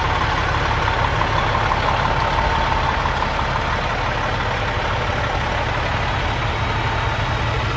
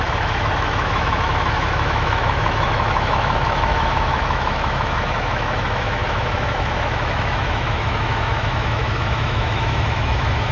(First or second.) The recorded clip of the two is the first